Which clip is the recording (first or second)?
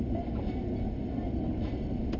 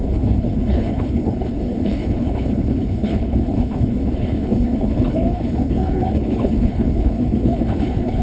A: first